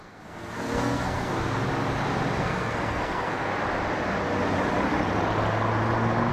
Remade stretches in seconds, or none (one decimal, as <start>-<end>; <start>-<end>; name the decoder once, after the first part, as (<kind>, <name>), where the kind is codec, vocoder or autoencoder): 0.0-1.3 (codec, SNAC); 2.4-3.5